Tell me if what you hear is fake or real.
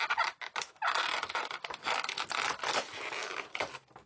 real